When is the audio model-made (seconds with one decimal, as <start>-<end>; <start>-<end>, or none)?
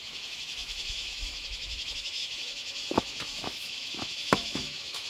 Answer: 0.0-5.1